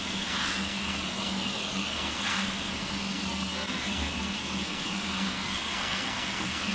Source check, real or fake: fake